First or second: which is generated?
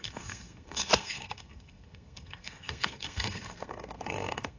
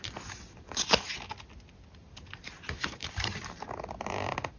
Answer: first